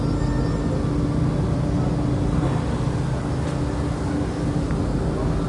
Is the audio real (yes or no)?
yes